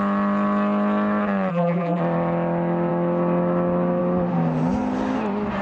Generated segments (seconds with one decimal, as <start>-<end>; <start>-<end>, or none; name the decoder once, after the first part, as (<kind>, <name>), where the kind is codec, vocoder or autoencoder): 1.5-2.0 (vocoder, BigVGAN v2)